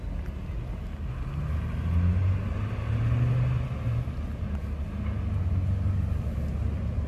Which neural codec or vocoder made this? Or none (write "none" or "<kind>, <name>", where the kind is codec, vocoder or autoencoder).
none